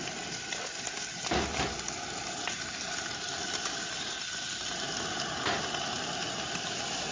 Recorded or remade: recorded